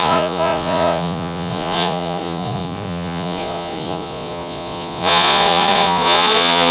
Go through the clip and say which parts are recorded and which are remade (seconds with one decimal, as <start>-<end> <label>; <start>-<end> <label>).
0.0-6.7 remade